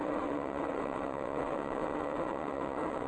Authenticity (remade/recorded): remade